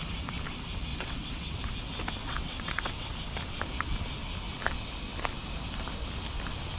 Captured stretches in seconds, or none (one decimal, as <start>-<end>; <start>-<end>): 0.0-0.9; 1.6-2.2; 3.1-6.8